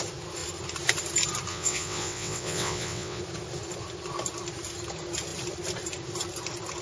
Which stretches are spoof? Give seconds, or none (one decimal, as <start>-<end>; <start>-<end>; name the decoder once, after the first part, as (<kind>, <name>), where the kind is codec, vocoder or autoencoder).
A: 1.5-3.2 (vocoder, WaveNeXt)